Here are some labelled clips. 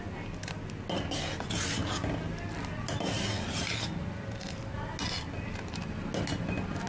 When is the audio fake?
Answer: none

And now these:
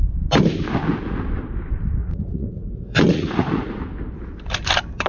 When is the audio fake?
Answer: 2.0-3.8

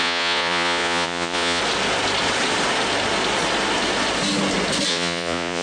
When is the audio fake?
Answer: 0.0-1.6; 4.9-5.6